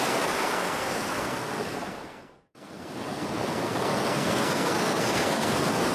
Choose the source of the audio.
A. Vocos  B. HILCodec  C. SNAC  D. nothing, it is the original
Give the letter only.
C